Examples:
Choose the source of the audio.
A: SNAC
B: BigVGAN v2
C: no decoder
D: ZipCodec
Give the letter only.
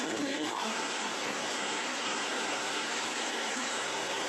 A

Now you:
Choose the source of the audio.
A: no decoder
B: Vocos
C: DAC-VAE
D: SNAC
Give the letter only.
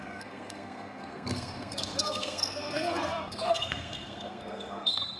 D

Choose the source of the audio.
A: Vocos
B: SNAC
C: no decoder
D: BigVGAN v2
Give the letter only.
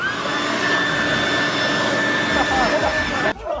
C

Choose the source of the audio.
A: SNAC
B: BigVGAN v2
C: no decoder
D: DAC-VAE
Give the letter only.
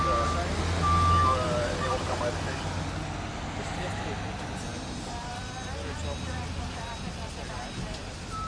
C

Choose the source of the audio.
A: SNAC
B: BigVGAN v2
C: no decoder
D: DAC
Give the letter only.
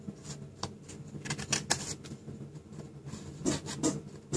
C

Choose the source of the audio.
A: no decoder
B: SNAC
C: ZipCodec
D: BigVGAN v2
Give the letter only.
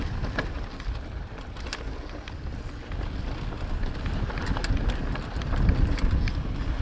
A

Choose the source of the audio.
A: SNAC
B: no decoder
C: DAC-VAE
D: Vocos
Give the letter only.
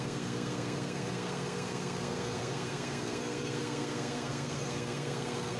A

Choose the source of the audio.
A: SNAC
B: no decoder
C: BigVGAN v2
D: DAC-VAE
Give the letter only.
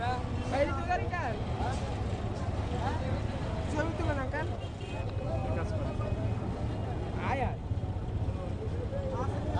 B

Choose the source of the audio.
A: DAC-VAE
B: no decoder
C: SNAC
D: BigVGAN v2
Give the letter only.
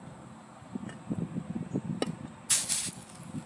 B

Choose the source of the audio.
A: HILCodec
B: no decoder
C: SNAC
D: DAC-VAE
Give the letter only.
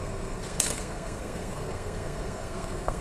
C